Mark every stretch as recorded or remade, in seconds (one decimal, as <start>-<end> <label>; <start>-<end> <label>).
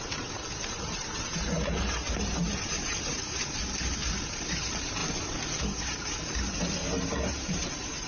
0.0-5.0 remade; 5.0-5.6 recorded; 5.6-8.1 remade